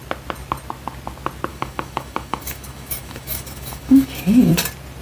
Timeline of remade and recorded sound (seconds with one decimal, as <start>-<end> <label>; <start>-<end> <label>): 0.0-1.5 recorded; 1.5-4.5 remade; 4.5-5.0 recorded